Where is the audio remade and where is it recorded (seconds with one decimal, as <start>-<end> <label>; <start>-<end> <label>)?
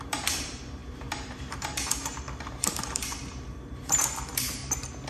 0.0-4.6 remade; 4.6-5.1 recorded